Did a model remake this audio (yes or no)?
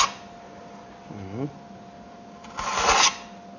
no